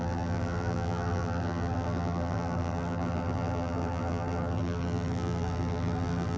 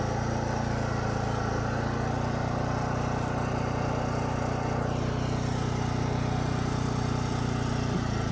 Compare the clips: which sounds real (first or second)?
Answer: second